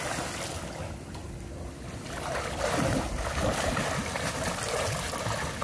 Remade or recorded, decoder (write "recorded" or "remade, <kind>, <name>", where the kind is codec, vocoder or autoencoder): recorded